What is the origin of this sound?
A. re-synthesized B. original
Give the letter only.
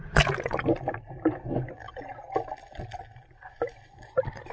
B